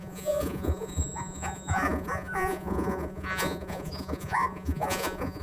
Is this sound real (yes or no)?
no